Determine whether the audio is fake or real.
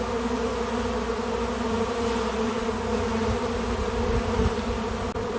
real